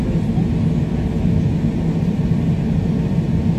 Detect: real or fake real